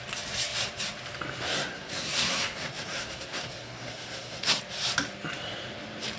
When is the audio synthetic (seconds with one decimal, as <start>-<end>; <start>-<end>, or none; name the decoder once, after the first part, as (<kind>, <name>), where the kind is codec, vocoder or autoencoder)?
1.5-4.5 (codec, SNAC)